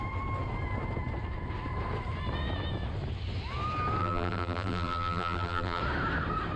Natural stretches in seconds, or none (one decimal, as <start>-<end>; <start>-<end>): 0.0-4.0; 5.8-6.6